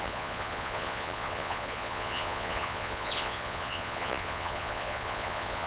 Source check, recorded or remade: remade